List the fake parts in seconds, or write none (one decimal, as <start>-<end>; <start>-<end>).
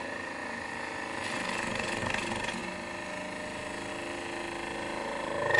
none